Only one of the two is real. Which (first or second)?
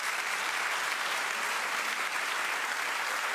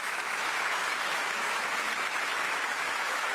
first